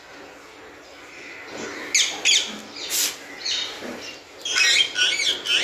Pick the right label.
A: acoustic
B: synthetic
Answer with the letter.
A